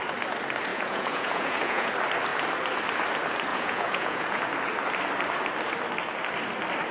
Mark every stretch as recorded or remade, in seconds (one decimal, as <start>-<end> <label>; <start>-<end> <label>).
0.0-0.7 recorded; 0.7-1.9 remade; 1.9-3.5 recorded; 3.5-4.4 remade; 4.4-6.9 recorded